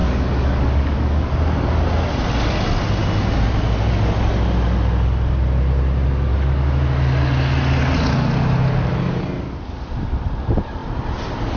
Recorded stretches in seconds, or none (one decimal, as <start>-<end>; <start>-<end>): 1.3-6.3; 6.8-11.6